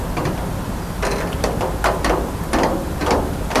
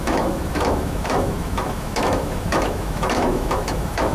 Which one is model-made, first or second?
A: second